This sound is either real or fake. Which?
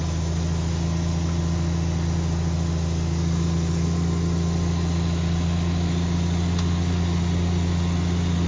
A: real